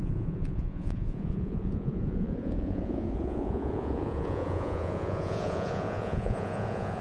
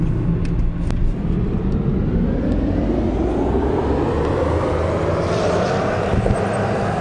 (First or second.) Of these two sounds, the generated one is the first